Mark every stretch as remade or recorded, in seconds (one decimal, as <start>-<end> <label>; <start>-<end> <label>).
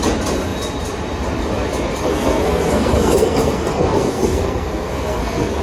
0.0-2.1 recorded; 2.1-5.6 remade